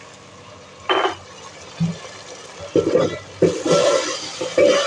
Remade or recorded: recorded